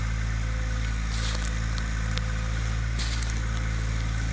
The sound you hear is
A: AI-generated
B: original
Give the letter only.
B